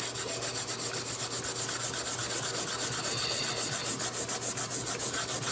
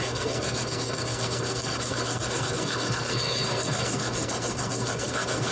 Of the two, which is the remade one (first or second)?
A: second